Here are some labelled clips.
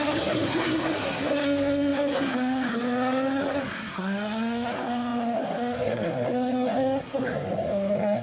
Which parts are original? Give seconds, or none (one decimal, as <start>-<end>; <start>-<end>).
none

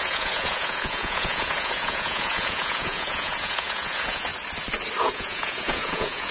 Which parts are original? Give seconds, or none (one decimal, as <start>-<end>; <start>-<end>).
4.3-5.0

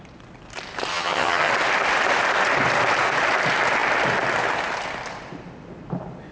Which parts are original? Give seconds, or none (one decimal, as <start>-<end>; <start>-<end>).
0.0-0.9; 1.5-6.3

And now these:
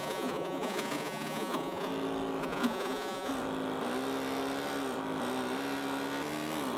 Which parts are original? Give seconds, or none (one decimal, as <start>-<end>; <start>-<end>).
1.9-2.4; 3.3-6.8

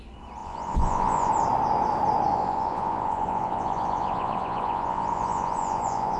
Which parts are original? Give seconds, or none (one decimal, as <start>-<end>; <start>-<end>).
0.0-0.4; 1.3-2.3